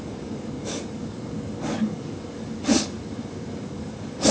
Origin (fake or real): fake